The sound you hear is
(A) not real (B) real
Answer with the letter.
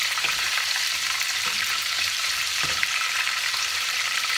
A